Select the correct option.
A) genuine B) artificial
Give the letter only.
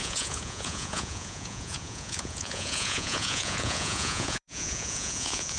B